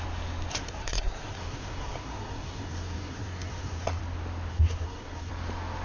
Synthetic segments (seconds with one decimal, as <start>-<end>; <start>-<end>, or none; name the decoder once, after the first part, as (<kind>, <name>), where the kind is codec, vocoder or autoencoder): 0.5-4.0 (codec, SNAC); 4.5-5.3